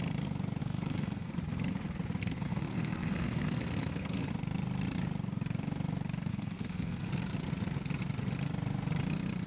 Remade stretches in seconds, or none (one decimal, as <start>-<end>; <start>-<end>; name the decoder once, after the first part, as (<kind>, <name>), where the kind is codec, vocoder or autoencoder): 0.6-1.3 (codec, SNAC); 2.2-4.3; 6.3-7.1